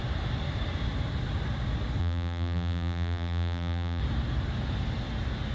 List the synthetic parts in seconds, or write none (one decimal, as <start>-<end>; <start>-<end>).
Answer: 2.0-4.0